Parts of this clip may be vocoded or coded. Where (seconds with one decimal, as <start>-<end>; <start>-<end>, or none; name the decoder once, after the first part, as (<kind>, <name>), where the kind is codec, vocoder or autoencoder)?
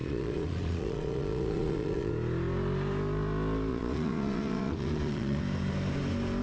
0.0-2.1 (vocoder, Vocos); 3.7-5.4